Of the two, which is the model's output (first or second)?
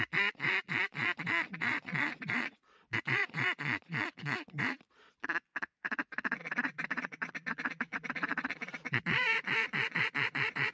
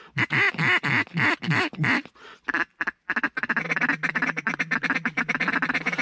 first